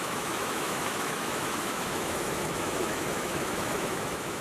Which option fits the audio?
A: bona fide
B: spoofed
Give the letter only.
B